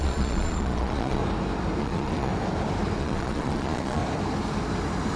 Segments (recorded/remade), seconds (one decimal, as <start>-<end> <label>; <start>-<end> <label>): 0.0-1.2 remade; 1.2-1.8 recorded; 1.8-2.3 remade; 2.3-3.0 recorded; 3.0-4.0 remade; 4.0-5.2 recorded